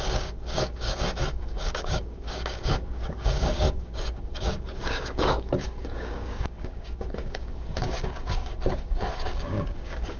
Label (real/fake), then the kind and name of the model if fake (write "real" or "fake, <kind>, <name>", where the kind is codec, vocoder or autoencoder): fake, codec, DAC